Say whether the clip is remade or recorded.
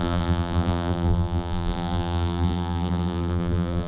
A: remade